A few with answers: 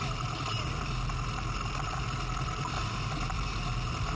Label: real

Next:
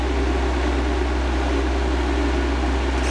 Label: real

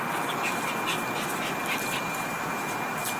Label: real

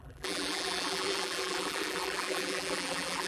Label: fake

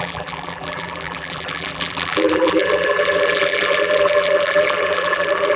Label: fake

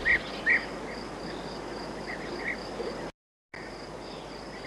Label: real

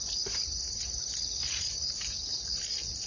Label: fake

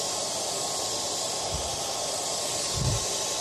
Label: real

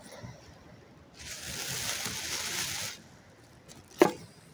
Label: real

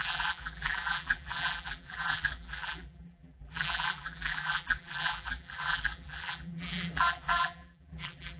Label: fake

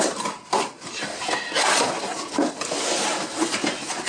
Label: real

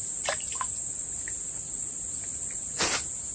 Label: real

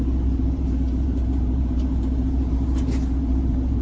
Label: fake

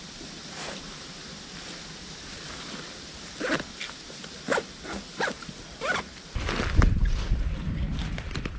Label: fake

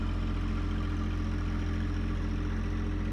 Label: real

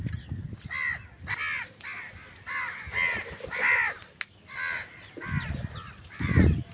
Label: real